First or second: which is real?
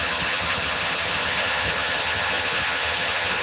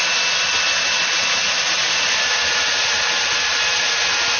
second